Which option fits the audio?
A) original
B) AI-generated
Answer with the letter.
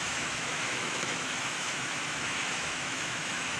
B